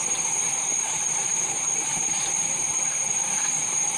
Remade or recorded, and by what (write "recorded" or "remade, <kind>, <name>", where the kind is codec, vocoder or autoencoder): recorded